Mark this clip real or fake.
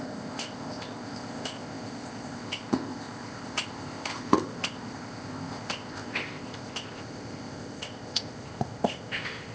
fake